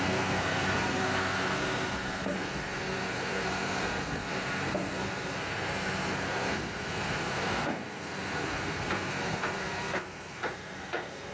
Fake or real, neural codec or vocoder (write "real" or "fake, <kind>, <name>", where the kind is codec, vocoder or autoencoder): fake, codec, SNAC